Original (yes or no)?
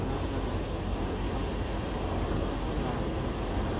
yes